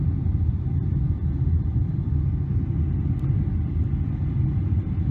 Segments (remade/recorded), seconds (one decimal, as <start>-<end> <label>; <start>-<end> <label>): 0.0-1.2 remade; 1.2-4.3 recorded; 4.3-5.1 remade